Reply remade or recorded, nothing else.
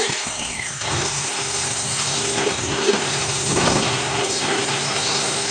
remade